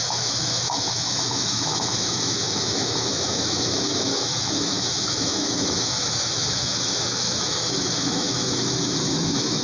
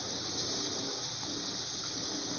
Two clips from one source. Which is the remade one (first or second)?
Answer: first